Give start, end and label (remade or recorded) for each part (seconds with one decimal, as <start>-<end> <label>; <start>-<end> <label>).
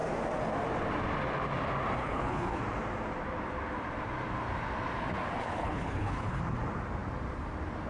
0.0-2.0 recorded; 2.0-2.6 remade; 2.6-5.4 recorded; 5.4-6.4 remade; 6.4-7.9 recorded